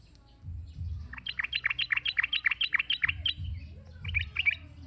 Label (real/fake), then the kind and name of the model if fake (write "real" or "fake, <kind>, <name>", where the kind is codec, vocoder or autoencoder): real